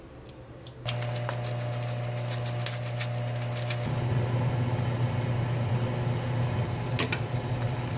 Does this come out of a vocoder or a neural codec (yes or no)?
no